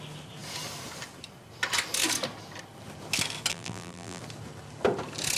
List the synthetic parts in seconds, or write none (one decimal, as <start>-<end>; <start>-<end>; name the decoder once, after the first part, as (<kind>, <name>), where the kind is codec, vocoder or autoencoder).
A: 3.5-4.2 (vocoder, BigVGAN v2)